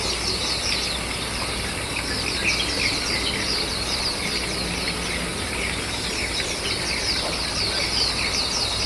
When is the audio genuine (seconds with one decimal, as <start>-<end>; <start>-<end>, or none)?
0.0-8.9